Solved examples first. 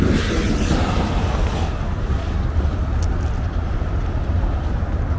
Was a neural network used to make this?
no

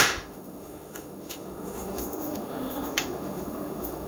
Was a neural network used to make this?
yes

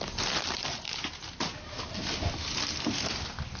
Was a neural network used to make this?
no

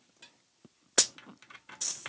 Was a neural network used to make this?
no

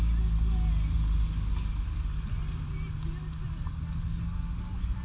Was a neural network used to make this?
no